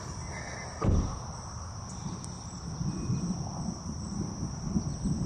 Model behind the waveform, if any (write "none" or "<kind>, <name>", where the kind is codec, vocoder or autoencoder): none